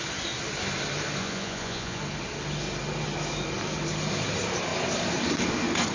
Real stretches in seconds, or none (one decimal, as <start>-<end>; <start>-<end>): 0.0-1.2; 2.0-5.9

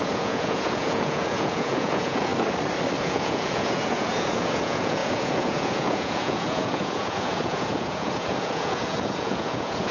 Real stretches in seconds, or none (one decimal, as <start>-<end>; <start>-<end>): 2.3-3.0

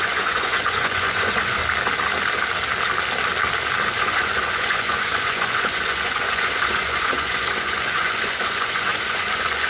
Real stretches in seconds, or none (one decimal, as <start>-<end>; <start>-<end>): 1.6-4.0